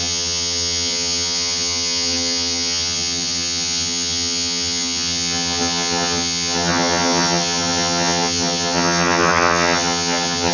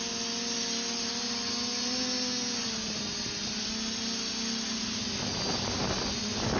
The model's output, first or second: first